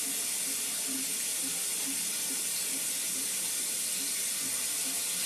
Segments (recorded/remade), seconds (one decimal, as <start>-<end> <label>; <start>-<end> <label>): 0.0-5.3 recorded